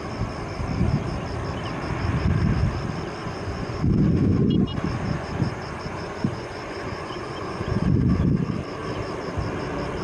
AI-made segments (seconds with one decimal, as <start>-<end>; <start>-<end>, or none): 3.2-3.8; 4.9-7.8